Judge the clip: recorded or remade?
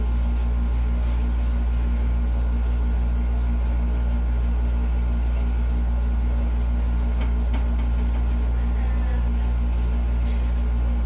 recorded